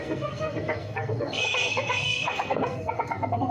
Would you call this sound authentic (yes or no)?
no